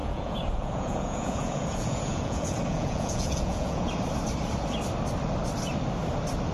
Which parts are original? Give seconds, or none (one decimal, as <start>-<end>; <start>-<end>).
3.9-6.5